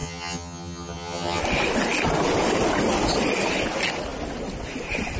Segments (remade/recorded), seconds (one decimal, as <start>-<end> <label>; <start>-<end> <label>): 0.0-1.4 remade; 1.4-5.2 recorded